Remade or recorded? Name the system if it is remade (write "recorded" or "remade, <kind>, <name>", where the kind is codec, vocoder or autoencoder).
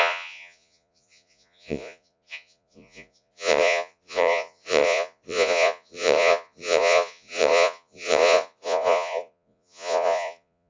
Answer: remade, vocoder, Vocos